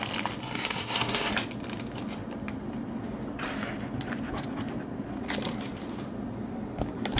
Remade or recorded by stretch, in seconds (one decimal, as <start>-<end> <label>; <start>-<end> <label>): 0.0-0.4 recorded; 0.4-1.3 remade; 1.3-7.2 recorded